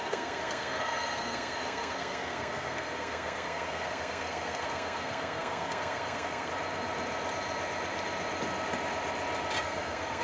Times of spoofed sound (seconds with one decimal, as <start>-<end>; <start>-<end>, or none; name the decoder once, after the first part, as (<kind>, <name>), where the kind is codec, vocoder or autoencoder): 0.0-6.5 (codec, SNAC); 9.6-10.2